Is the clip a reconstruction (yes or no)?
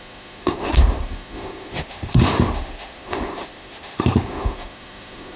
yes